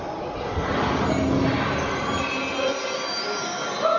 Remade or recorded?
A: recorded